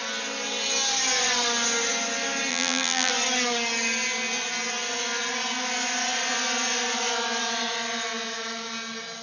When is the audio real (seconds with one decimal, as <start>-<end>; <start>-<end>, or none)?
0.0-2.5; 3.1-9.2